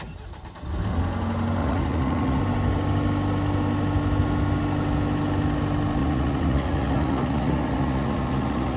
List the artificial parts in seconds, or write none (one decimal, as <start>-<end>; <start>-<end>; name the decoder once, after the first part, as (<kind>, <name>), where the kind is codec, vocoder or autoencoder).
1.6-2.4 (vocoder, Vocos); 6.0-8.8